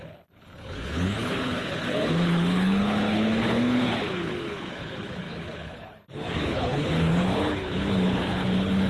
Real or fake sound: fake